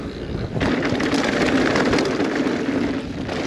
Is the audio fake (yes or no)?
no